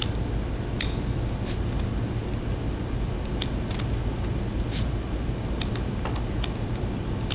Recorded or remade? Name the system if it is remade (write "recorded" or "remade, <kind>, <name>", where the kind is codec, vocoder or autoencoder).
recorded